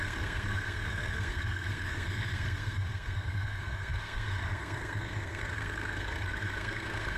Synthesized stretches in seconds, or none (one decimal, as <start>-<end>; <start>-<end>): 0.0-7.2